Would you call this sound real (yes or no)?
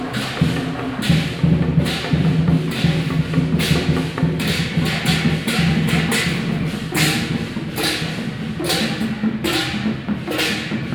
yes